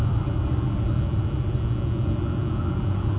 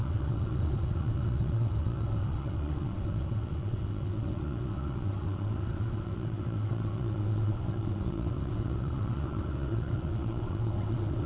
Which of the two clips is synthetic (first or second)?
second